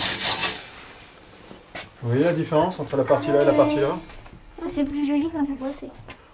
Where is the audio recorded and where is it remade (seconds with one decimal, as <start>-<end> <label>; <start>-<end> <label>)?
0.0-4.9 recorded; 4.9-5.6 remade; 5.6-6.3 recorded